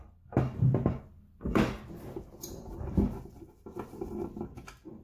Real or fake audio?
real